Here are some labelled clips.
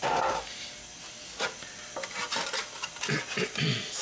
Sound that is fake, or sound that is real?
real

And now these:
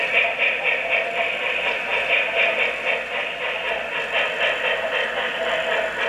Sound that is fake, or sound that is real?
real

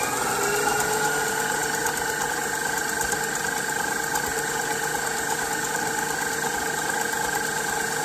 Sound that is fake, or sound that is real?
real